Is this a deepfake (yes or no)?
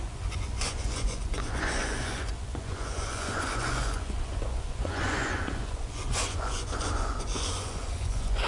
yes